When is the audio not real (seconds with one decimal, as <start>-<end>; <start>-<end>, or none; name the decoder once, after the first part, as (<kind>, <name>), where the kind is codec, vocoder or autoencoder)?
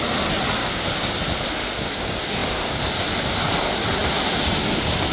0.6-1.2 (codec, DAC)